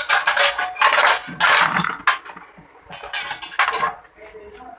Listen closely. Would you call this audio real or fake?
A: real